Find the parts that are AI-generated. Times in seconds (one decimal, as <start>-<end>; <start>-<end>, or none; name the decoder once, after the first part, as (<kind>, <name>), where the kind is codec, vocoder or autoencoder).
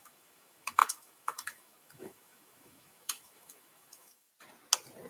0.0-4.3 (autoencoder, DAC-VAE)